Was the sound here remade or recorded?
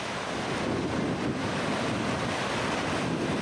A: recorded